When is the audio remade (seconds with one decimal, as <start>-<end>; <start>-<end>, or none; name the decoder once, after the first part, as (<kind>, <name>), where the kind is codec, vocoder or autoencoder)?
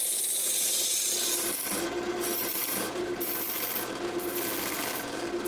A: 0.4-1.0 (vocoder, BigVGAN v2); 2.5-3.1